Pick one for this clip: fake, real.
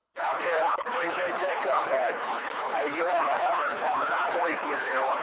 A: fake